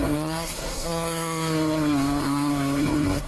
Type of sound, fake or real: fake